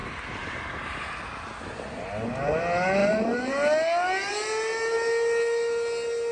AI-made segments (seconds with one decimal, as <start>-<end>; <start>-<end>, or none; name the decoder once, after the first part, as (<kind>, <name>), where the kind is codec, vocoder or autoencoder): 0.0-1.0 (vocoder, BigVGAN v2); 3.0-3.5